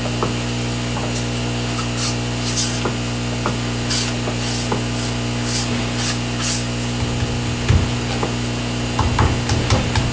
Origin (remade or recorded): recorded